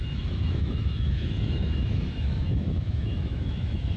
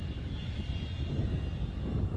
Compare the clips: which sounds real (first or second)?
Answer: second